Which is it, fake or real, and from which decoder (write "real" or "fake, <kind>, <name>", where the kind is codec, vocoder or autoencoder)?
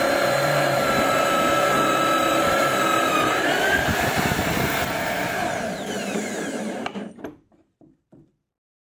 fake, vocoder, BigVGAN v2